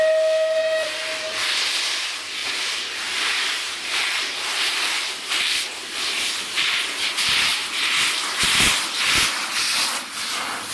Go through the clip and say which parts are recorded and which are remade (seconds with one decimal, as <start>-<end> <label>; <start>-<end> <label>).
0.0-2.4 recorded; 2.4-6.3 remade; 6.3-7.5 recorded; 7.5-8.6 remade; 8.6-10.7 recorded